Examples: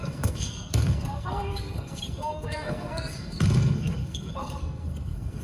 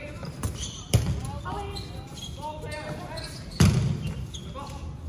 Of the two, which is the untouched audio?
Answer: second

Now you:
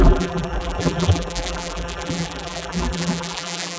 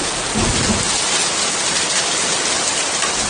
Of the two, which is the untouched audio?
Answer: second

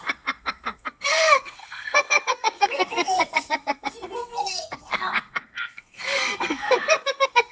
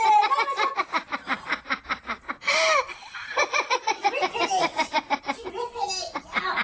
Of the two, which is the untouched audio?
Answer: second